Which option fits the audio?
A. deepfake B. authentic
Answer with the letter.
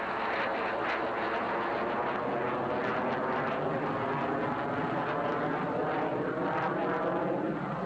B